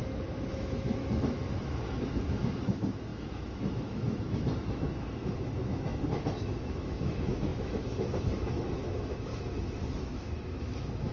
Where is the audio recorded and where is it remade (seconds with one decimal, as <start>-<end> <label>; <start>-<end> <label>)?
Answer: 0.0-9.3 remade; 9.3-9.9 recorded; 9.9-11.1 remade